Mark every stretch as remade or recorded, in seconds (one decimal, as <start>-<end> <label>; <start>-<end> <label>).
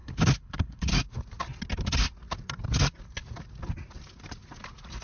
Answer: 0.0-0.9 remade; 0.9-5.0 recorded